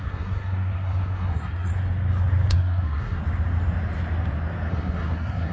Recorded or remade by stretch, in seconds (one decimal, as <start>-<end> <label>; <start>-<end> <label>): 0.0-1.7 remade; 1.7-2.5 recorded; 2.5-3.2 remade; 3.2-4.7 recorded; 4.7-5.5 remade